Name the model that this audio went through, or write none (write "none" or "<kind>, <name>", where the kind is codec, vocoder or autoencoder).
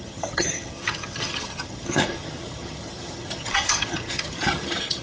vocoder, HiFi-GAN